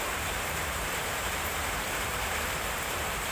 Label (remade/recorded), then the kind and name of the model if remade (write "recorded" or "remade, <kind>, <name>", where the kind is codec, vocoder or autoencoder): remade, vocoder, BigVGAN v2